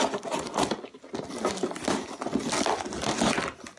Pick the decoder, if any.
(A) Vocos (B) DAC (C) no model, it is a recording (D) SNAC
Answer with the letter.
C